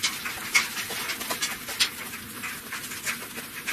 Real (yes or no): yes